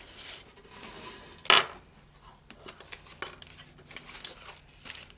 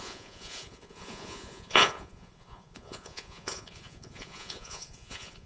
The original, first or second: first